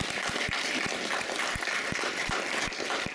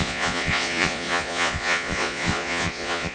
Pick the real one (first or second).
first